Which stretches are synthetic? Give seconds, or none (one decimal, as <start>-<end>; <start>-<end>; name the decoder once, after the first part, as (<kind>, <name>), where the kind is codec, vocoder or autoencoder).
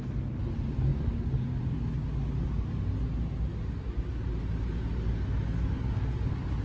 none